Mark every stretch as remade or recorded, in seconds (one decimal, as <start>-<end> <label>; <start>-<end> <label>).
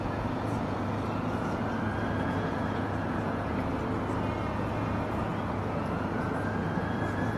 0.0-1.6 remade; 1.6-2.2 recorded; 2.2-3.7 remade; 3.7-4.5 recorded; 4.5-7.4 remade